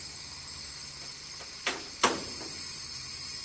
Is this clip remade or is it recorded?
recorded